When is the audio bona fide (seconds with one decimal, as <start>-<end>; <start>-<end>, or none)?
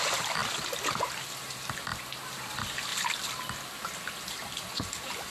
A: 0.4-1.4; 2.9-4.3